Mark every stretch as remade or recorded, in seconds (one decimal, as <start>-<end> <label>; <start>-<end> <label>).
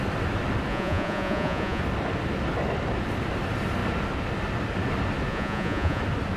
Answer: 0.0-0.7 recorded; 0.7-1.8 remade; 1.8-5.3 recorded; 5.3-6.0 remade; 6.0-6.4 recorded